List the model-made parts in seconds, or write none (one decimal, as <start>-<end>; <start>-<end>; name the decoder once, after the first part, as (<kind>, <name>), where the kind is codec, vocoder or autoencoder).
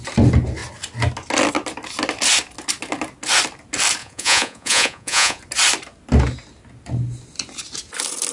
4.0-5.4 (vocoder, Vocos)